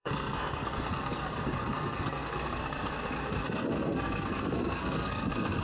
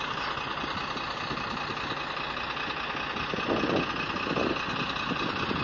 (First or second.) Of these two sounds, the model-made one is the first